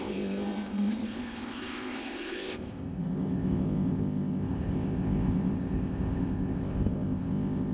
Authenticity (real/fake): fake